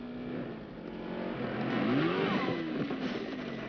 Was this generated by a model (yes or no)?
no